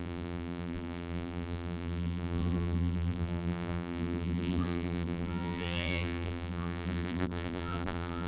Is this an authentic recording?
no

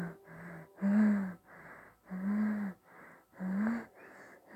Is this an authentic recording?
yes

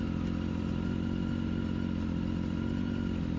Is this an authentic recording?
yes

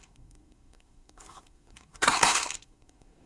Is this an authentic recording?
no